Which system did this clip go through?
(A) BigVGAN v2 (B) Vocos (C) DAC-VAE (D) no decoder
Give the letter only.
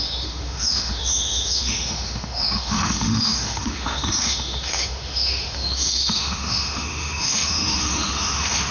C